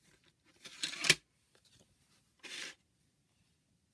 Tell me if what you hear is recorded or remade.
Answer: recorded